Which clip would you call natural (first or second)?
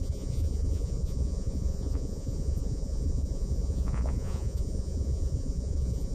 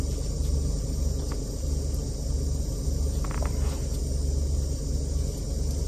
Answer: second